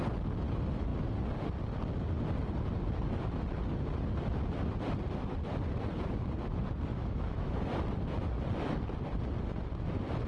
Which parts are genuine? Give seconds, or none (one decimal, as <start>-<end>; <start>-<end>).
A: 0.0-6.9; 7.7-10.3